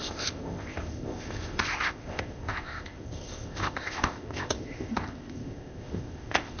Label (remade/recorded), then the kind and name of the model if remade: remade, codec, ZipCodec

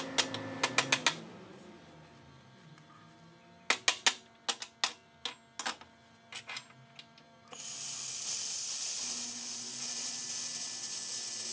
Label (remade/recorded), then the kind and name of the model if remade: recorded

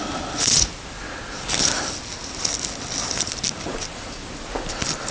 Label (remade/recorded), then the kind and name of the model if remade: recorded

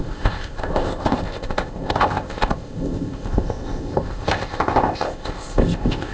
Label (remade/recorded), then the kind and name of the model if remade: remade, codec, ZipCodec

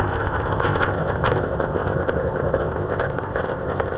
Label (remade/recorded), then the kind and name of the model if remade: remade, codec, ZipCodec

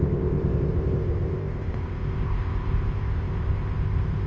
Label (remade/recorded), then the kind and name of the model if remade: remade, codec, ZipCodec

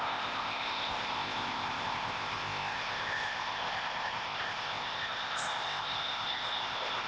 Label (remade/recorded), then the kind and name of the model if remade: remade, codec, ZipCodec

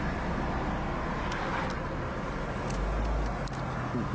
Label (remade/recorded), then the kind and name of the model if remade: recorded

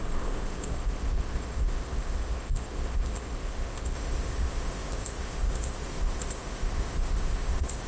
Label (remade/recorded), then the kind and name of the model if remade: remade, codec, ZipCodec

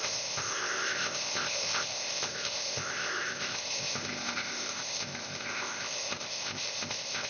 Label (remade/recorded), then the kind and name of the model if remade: remade, codec, ZipCodec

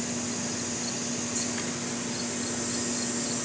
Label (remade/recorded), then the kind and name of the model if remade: recorded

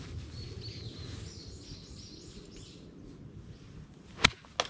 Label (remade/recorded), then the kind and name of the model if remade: recorded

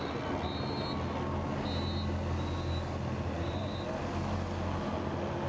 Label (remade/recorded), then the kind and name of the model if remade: recorded